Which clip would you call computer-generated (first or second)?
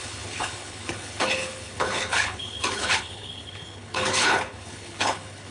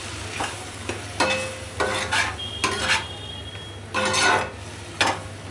first